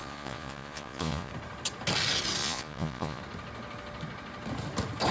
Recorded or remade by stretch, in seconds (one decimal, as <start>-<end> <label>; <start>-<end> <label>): 0.0-1.3 remade; 1.3-2.4 recorded; 2.4-3.2 remade; 3.2-5.1 recorded